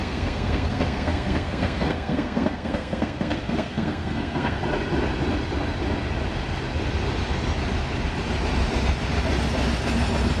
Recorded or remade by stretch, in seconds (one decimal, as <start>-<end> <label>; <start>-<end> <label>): 0.0-4.6 remade; 4.6-10.4 recorded